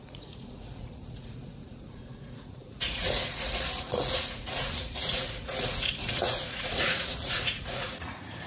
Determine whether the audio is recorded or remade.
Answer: remade